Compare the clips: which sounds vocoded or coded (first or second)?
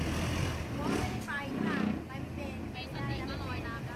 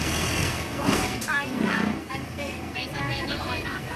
second